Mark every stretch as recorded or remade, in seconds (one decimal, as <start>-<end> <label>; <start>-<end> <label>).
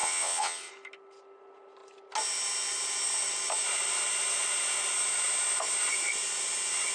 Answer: 0.0-0.7 remade; 0.7-6.9 recorded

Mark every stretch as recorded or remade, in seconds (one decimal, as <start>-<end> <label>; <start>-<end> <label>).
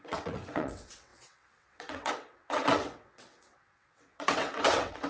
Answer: 0.0-5.1 remade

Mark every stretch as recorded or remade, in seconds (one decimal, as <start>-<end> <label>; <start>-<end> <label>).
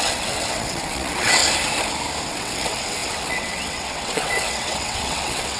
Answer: 0.0-1.4 remade; 1.4-2.3 recorded; 2.3-5.6 remade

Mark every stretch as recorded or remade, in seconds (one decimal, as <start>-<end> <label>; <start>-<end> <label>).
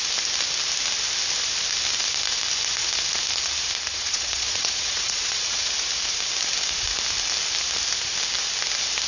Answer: 0.0-3.9 recorded; 3.9-5.7 remade; 5.7-9.1 recorded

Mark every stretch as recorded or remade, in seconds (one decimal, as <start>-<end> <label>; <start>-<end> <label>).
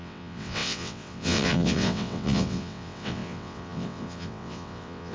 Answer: 0.0-5.1 remade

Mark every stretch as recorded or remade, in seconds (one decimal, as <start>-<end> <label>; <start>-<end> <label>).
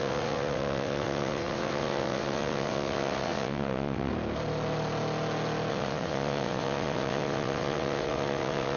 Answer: 0.0-4.1 remade; 4.1-5.7 recorded; 5.7-8.8 remade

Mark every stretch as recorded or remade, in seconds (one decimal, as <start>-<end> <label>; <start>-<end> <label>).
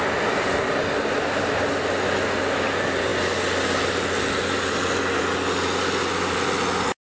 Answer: 0.0-7.1 recorded